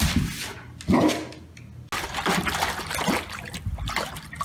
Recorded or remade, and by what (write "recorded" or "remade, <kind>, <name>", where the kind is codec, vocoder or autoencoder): recorded